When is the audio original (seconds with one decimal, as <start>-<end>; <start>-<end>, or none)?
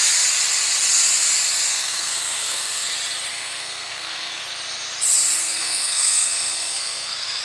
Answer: 0.0-1.7; 2.9-3.3; 4.4-5.4